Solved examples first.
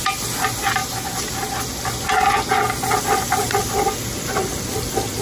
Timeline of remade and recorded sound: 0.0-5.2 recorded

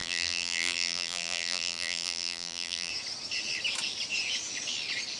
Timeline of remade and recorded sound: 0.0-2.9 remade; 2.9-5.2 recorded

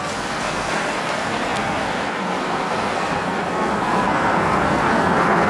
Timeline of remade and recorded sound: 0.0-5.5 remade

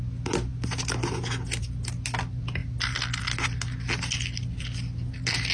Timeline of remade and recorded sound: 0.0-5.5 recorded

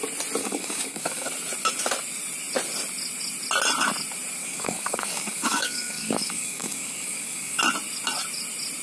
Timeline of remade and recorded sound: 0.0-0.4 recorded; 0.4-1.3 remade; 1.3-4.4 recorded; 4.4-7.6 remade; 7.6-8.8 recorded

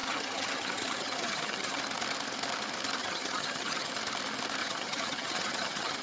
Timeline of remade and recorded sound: 0.0-1.8 remade; 1.8-3.0 recorded; 3.0-3.9 remade; 3.9-4.6 recorded; 4.6-6.0 remade

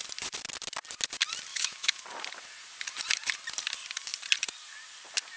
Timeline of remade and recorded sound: 0.0-1.5 recorded; 1.5-2.0 remade; 2.0-5.4 recorded